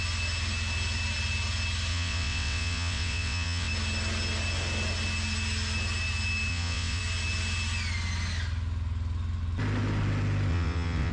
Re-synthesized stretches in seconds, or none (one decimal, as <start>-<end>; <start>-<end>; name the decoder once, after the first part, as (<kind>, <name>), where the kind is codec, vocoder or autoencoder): 1.9-3.7 (vocoder, WaveNeXt); 6.5-7.0; 10.5-11.1